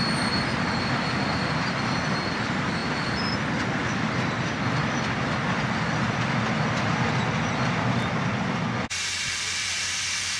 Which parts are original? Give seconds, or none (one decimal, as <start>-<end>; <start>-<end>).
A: 0.0-10.4

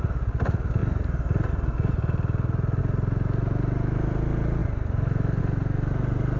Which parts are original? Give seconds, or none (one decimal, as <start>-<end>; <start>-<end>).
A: 0.0-6.4

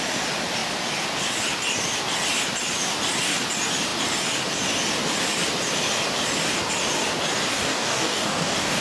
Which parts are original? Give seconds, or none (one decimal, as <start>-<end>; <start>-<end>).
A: 0.0-7.5

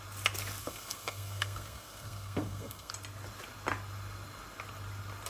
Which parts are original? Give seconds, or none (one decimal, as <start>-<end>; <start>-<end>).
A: 0.0-0.6; 2.9-5.3

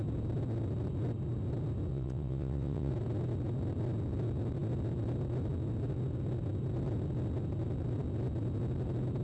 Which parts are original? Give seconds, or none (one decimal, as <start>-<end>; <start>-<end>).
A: 0.0-1.9; 2.9-9.2

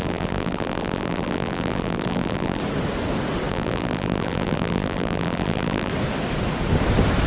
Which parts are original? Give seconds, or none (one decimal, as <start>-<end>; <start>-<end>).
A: 2.6-3.5; 5.9-7.3